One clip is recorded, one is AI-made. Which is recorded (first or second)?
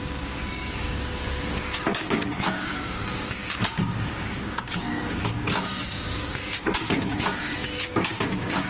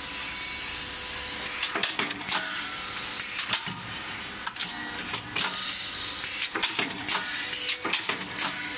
second